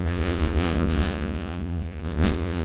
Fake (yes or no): yes